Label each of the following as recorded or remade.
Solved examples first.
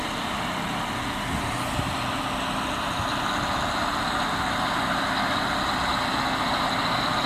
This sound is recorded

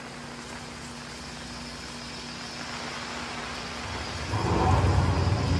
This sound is recorded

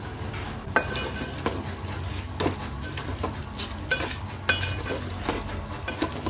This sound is recorded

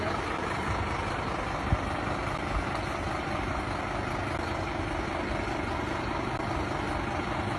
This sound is recorded